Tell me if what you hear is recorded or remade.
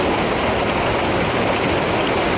recorded